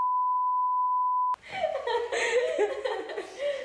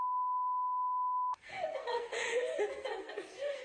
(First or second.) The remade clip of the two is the second